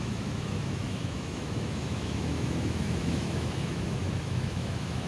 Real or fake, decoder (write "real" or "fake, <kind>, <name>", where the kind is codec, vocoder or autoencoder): fake, autoencoder, DAC-VAE